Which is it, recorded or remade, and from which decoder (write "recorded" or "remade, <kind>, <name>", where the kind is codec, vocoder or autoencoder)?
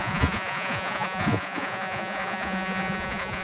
remade, vocoder, Vocos